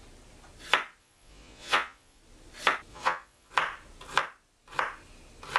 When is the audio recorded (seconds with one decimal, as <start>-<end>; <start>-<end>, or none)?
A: 0.0-1.0; 2.2-2.9; 3.5-5.6